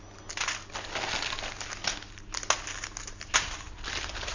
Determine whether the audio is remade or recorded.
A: recorded